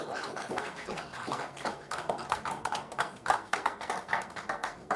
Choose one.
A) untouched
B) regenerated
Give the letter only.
B